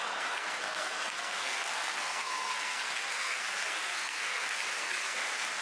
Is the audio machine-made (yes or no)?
yes